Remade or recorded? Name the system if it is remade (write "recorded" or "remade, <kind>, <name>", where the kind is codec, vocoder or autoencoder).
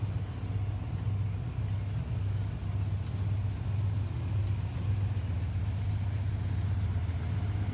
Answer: recorded